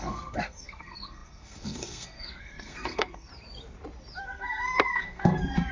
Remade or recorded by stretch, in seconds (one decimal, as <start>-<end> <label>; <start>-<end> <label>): 0.0-3.3 remade; 3.3-4.2 recorded; 4.2-5.7 remade